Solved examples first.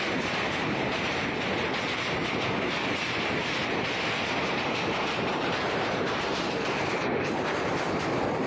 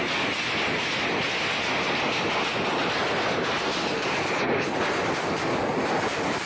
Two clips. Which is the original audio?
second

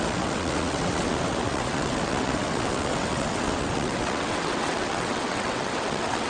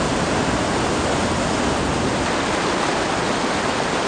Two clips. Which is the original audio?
second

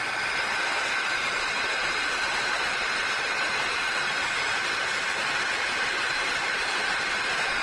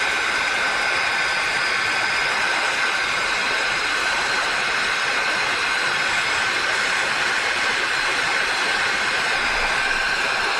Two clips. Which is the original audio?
first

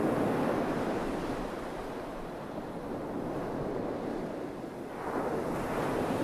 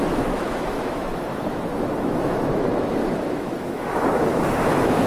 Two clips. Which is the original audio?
first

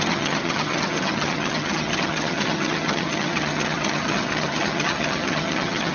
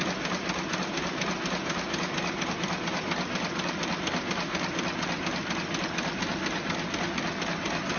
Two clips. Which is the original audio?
second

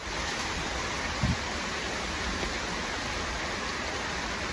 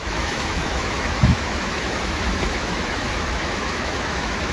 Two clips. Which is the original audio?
first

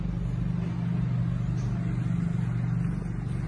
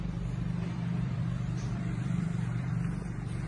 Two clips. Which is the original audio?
first